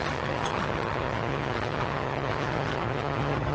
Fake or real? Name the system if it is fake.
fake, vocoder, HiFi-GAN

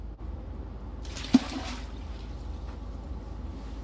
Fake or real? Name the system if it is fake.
real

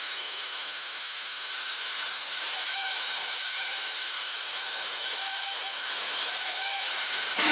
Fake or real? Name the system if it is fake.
fake, autoencoder, DAC-VAE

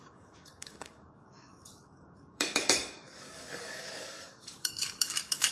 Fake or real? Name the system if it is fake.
fake, codec, DAC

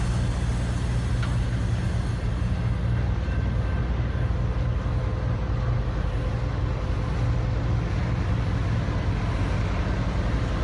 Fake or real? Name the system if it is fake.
real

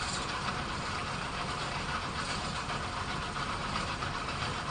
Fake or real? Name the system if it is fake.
fake, vocoder, BigVGAN v2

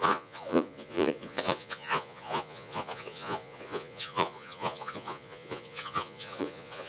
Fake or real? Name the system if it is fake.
fake, vocoder, Vocos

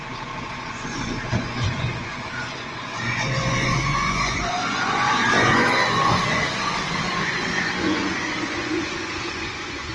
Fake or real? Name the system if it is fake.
fake, vocoder, Vocos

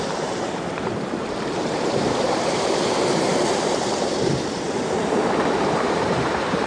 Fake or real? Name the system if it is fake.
fake, vocoder, BigVGAN v2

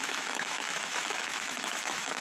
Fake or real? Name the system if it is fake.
fake, autoencoder, DAC-VAE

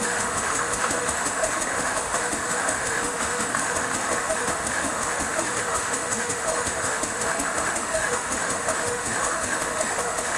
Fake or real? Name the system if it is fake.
fake, autoencoder, DAC-VAE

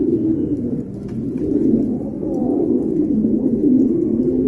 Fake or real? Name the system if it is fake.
fake, vocoder, BigVGAN v2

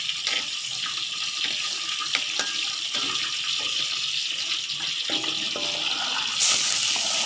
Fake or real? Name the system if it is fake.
real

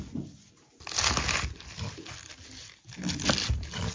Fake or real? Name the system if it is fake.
real